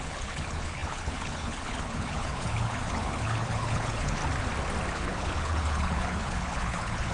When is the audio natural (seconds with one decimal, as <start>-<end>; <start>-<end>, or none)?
4.2-4.9